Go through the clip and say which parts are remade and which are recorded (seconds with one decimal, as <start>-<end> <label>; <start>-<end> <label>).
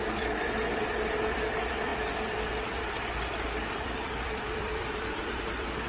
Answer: 0.0-5.9 remade